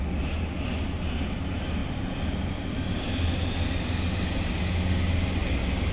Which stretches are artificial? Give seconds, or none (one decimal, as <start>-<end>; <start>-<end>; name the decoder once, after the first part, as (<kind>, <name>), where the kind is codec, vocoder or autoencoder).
none